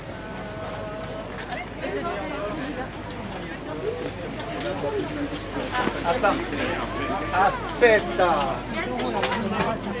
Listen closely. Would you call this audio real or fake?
real